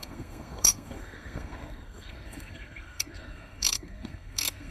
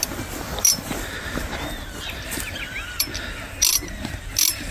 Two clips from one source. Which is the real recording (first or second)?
second